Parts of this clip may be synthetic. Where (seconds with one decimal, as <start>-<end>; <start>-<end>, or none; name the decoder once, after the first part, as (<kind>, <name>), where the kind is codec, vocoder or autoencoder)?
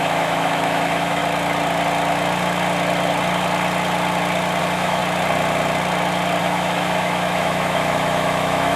0.0-1.2 (autoencoder, DAC-VAE); 4.6-5.0; 6.4-8.8